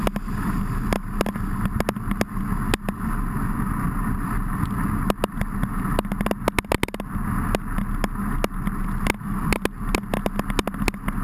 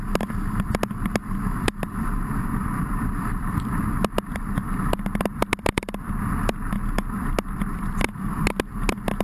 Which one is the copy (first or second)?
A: second